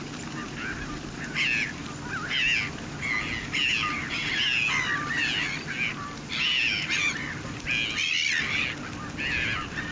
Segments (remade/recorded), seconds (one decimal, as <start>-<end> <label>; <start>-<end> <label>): 0.0-9.9 recorded